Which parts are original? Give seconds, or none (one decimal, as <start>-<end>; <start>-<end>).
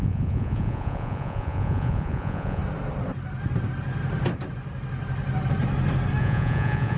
2.6-6.2